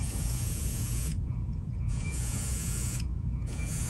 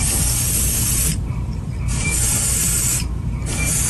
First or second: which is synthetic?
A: first